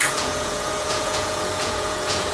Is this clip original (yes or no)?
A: no